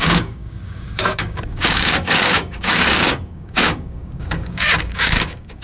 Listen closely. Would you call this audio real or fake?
fake